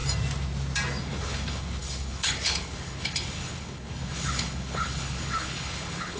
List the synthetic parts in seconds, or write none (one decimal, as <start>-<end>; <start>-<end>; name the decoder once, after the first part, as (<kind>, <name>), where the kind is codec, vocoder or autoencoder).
1.0-6.2 (codec, HILCodec)